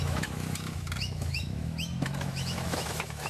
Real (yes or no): no